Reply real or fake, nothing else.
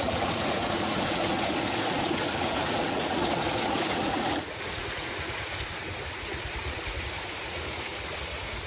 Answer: fake